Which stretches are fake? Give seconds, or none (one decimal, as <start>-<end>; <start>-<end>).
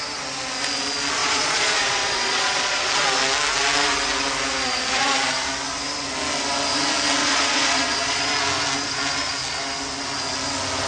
1.2-2.9; 7.2-8.3